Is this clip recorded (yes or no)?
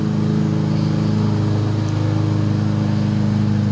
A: yes